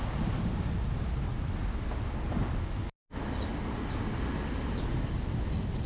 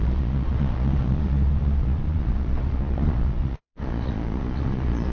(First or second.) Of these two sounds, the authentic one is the first